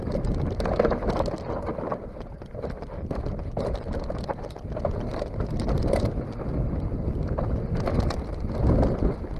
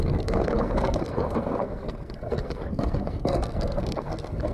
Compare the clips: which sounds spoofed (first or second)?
second